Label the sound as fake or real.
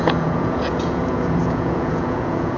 fake